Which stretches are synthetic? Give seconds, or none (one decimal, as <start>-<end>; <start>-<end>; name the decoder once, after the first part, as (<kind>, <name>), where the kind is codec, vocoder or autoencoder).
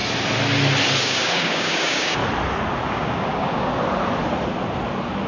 1.0-2.2 (codec, DAC); 2.9-3.7